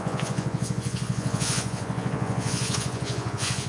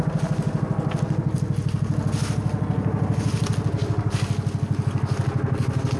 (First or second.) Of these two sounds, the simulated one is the first